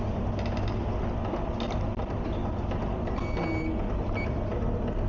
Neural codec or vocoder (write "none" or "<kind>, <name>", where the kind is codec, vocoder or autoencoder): none